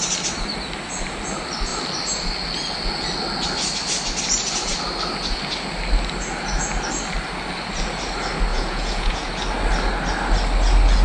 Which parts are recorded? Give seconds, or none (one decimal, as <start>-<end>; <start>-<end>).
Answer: 0.0-8.5; 9.3-11.0